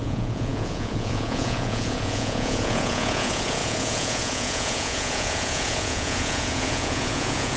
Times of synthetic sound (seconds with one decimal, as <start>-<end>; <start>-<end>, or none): 0.0-7.6